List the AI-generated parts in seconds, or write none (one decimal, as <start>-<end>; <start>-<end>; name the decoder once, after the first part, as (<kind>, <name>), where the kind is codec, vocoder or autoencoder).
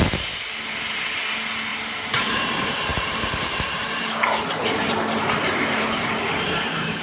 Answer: 2.9-7.0 (vocoder, BigVGAN v2)